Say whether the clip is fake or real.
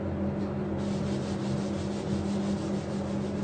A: real